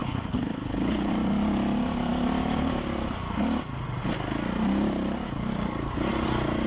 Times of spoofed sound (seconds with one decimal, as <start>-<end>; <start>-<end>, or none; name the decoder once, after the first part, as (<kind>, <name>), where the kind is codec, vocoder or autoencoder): 0.0-1.1 (codec, HILCodec)